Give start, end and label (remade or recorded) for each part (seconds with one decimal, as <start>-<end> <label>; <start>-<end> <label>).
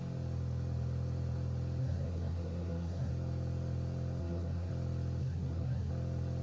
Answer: 0.0-1.8 recorded; 1.8-3.1 remade; 3.1-4.2 recorded; 4.2-4.7 remade; 4.7-5.2 recorded; 5.2-5.9 remade; 5.9-6.4 recorded